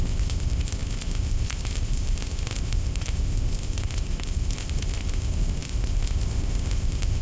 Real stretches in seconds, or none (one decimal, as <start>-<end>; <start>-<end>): none

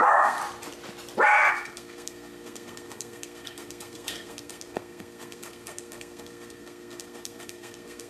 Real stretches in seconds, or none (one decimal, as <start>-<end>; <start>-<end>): 0.4-1.5

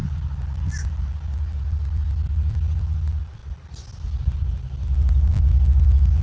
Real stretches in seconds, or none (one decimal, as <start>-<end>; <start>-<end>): 0.0-6.2